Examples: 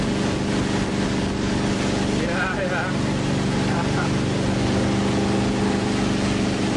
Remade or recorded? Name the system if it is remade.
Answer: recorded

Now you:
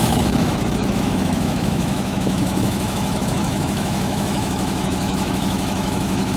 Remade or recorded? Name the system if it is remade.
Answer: remade, autoencoder, DAC-VAE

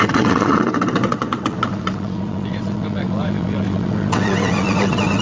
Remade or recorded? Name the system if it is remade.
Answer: remade, vocoder, WaveNeXt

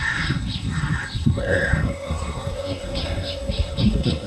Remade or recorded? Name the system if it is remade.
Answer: remade, codec, SNAC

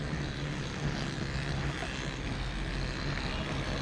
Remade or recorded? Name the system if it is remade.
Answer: recorded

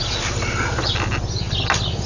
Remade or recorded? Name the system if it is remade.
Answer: recorded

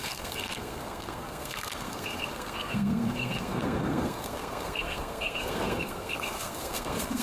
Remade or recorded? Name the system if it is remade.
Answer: remade, codec, SNAC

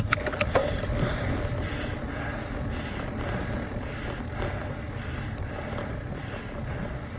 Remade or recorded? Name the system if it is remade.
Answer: recorded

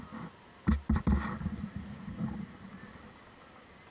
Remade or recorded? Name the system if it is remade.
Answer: recorded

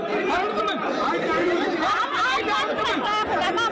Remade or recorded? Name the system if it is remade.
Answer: recorded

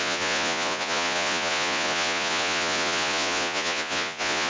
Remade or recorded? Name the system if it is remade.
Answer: remade, vocoder, Vocos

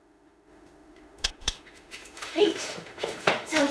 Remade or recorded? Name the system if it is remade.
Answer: remade, autoencoder, DAC-VAE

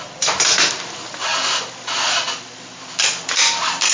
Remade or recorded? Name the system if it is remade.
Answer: recorded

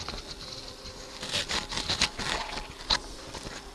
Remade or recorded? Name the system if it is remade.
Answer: recorded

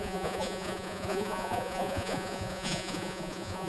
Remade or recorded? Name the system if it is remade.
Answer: remade, vocoder, Vocos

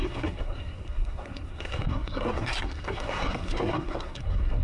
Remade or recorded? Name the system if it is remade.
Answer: remade, codec, SNAC